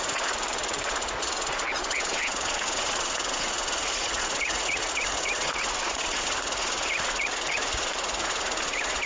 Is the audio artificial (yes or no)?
yes